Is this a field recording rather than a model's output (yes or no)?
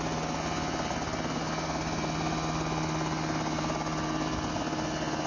yes